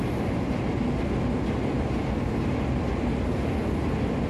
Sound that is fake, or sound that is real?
real